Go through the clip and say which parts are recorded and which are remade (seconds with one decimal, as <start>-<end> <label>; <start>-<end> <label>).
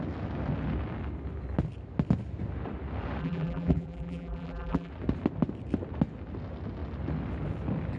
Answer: 0.0-3.2 recorded; 3.2-4.9 remade; 4.9-8.0 recorded